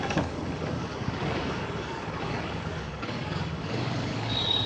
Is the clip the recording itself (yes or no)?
no